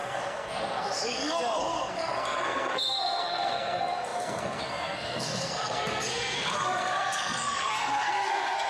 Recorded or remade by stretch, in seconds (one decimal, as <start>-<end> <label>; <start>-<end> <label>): 0.0-8.7 remade